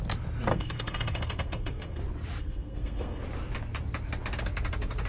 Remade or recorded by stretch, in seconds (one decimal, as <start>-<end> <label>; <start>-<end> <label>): 0.0-0.5 recorded; 0.5-2.0 remade; 2.0-2.4 recorded; 2.4-3.2 remade; 3.2-5.1 recorded